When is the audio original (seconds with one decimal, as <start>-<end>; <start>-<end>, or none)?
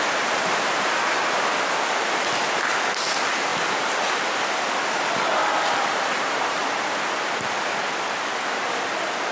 0.0-5.9; 6.6-9.3